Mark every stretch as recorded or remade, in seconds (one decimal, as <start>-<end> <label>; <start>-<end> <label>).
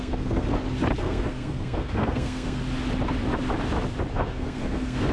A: 0.0-0.5 remade; 0.5-1.0 recorded; 1.0-2.6 remade; 2.6-4.1 recorded; 4.1-5.1 remade